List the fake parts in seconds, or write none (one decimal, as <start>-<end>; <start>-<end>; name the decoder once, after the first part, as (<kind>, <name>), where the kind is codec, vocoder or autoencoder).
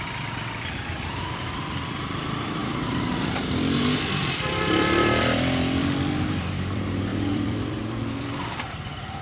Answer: 0.0-9.2 (vocoder, BigVGAN v2)